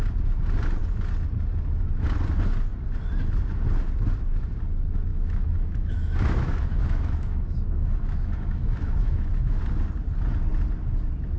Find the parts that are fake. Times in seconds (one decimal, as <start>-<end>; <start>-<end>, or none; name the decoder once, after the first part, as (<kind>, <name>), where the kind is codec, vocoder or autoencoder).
5.1-9.6 (autoencoder, DAC-VAE)